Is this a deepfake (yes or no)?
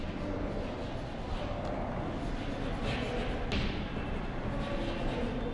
no